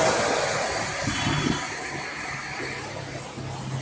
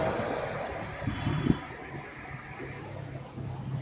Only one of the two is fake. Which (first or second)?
second